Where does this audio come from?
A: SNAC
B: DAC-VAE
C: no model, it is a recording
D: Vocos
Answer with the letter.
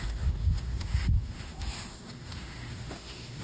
B